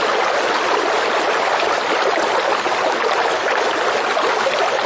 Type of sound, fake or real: real